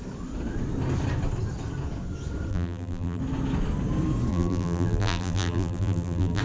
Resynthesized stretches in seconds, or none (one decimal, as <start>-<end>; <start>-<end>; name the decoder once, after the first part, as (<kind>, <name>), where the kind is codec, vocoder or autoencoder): 2.5-3.2 (vocoder, BigVGAN v2); 4.3-6.4